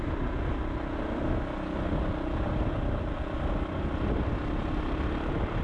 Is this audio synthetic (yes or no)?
no